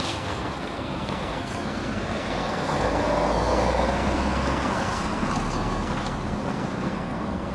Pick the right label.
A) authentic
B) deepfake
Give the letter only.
B